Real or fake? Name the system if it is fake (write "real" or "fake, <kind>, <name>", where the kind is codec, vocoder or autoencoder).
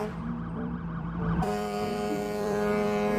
fake, vocoder, BigVGAN v2